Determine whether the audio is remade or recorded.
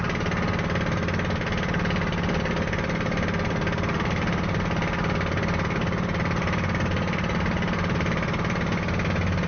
recorded